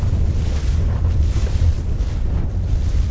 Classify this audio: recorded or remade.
recorded